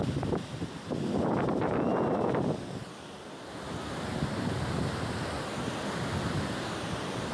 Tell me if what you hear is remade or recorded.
recorded